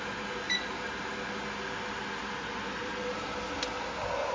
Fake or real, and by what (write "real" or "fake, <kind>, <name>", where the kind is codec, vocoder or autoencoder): real